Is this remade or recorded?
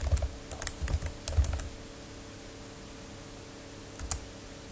recorded